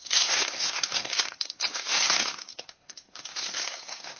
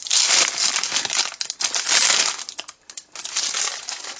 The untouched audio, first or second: second